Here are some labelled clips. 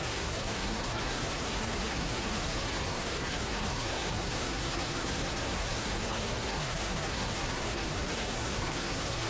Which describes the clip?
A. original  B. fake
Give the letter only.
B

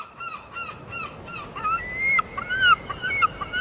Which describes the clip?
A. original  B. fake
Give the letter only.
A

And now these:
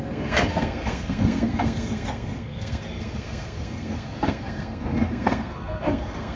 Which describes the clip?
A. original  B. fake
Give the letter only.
B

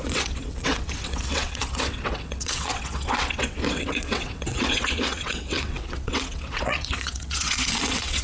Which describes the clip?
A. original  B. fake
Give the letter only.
B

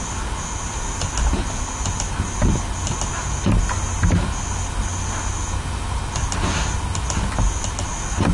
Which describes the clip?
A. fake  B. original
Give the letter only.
B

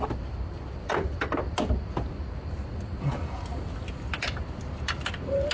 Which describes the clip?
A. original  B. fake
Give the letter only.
A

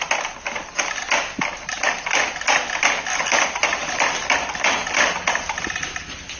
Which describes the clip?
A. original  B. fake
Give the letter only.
A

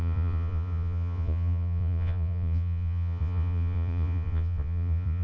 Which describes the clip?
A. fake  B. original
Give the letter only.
A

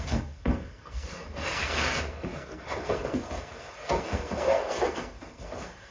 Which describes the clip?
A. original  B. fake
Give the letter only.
B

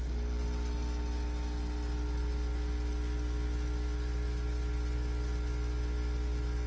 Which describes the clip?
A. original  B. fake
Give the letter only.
A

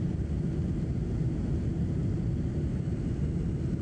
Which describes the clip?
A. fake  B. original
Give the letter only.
B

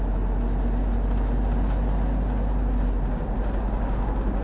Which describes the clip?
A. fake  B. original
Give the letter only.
B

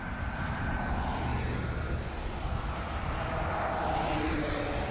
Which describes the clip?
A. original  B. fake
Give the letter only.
A